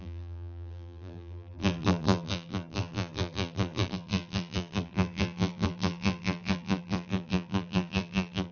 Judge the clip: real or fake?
fake